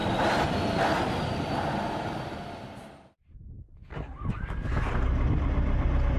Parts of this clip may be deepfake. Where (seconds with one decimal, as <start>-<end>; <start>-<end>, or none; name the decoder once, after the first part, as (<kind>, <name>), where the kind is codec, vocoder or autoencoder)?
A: none